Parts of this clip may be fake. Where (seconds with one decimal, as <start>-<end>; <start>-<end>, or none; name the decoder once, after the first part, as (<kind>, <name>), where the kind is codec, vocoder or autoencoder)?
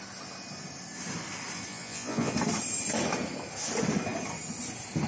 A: 1.7-2.3 (vocoder, Vocos)